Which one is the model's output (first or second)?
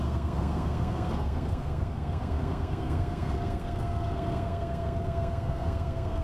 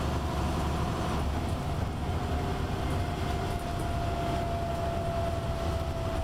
first